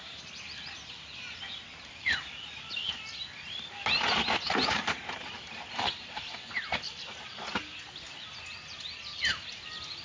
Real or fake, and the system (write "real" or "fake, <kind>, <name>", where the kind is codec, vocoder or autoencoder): real